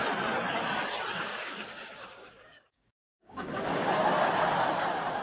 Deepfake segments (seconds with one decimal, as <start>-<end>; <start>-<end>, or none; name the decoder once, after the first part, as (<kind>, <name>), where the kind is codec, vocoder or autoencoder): 1.1-3.9 (codec, DAC)